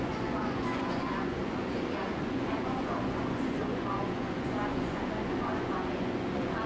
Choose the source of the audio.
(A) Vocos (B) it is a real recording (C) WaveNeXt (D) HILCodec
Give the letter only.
A